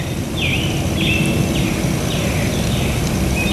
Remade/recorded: recorded